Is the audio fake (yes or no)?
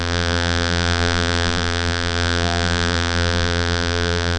yes